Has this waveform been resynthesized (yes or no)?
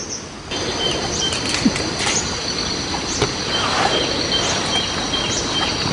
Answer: no